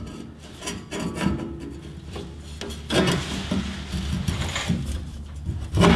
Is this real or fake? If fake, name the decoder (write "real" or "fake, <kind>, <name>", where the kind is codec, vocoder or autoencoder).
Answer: real